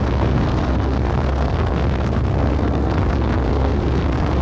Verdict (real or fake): fake